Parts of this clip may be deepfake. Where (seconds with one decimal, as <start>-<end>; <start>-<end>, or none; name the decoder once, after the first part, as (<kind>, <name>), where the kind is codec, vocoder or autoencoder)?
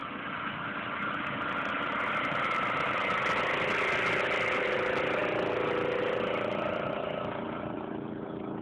none